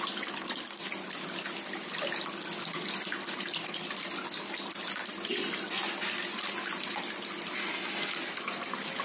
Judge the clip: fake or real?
real